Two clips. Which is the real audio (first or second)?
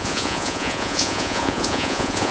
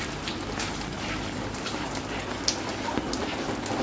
second